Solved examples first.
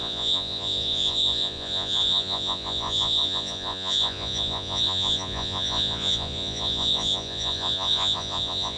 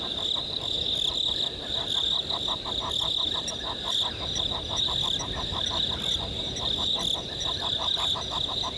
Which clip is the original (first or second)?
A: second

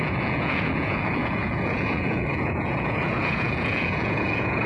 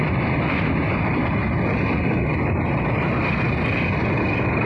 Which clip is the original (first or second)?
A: second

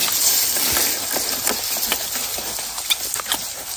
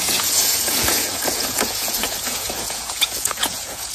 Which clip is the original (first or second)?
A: first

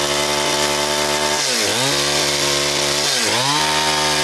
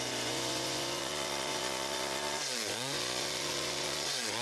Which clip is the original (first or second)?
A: first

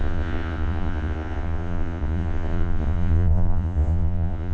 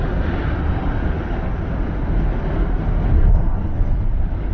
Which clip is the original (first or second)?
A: second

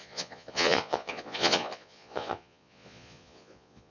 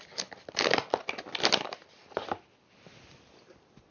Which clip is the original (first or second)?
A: second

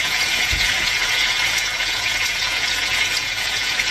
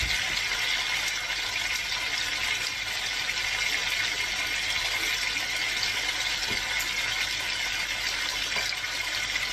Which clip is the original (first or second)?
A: second